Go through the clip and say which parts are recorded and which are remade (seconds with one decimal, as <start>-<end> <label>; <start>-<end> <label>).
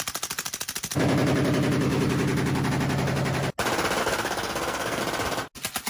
0.0-4.0 recorded; 4.0-5.0 remade; 5.0-5.9 recorded